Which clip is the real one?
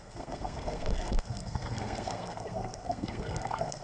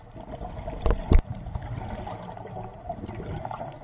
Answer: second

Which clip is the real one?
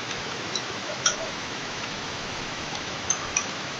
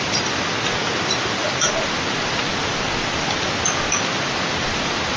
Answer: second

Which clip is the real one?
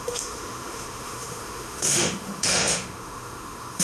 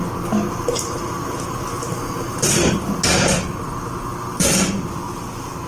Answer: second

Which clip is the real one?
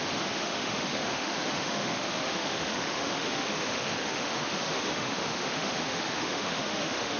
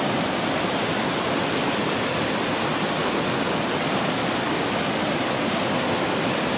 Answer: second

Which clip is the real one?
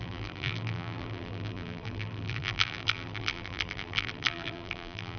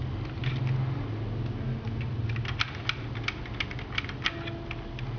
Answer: second